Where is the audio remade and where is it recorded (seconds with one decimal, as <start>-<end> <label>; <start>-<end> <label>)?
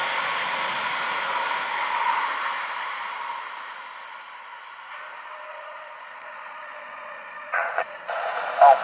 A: 0.0-5.5 recorded; 5.5-8.4 remade; 8.4-8.8 recorded